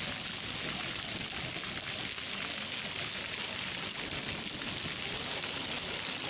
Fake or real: real